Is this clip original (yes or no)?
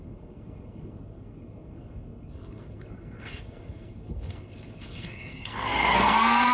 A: no